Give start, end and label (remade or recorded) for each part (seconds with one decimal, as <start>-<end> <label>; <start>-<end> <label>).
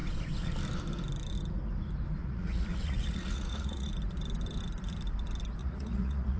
0.0-2.2 recorded; 2.2-3.9 remade; 3.9-5.6 recorded; 5.6-6.4 remade